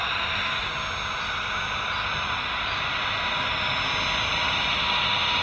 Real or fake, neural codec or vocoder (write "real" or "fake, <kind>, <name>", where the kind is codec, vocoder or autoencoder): real